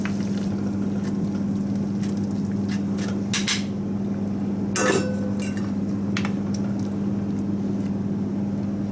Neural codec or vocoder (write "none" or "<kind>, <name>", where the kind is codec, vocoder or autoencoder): none